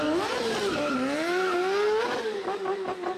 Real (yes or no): yes